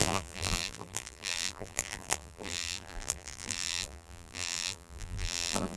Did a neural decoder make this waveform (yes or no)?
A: yes